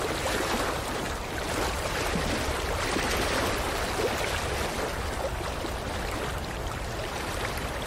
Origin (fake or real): real